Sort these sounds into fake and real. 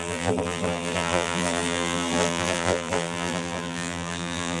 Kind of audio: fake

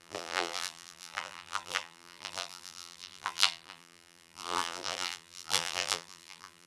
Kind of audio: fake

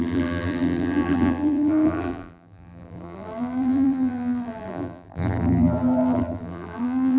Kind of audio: fake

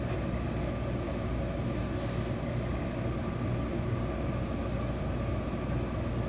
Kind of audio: real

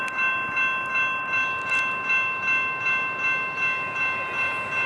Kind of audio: real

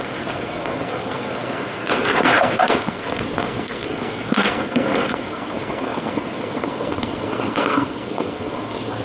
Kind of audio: fake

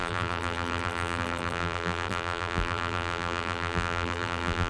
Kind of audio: fake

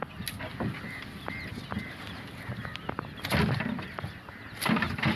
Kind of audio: real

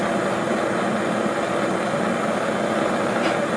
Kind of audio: real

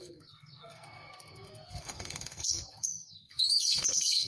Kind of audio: fake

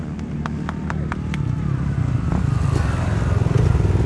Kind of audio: real